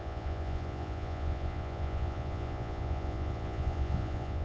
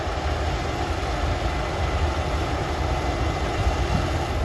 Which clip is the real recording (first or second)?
second